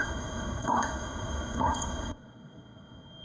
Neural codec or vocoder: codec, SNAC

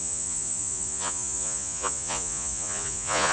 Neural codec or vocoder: vocoder, Vocos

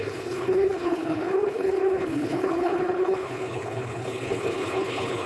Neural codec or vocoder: codec, HILCodec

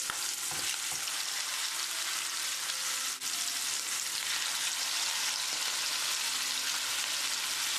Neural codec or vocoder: none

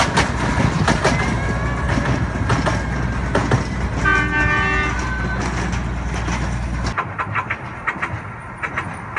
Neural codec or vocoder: none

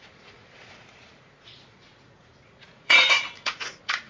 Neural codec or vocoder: vocoder, Vocos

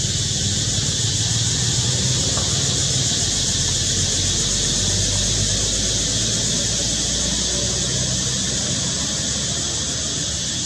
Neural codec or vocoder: none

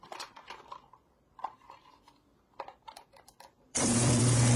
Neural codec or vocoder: vocoder, BigVGAN v2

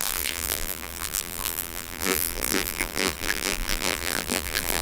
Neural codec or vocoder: vocoder, BigVGAN v2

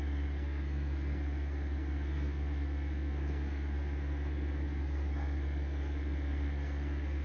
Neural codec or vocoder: codec, SNAC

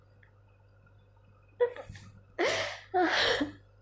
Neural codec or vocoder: none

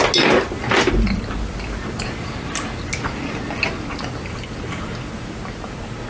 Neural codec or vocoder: none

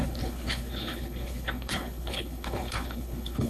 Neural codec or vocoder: codec, HILCodec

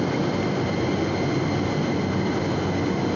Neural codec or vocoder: none